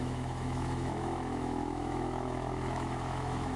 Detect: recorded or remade remade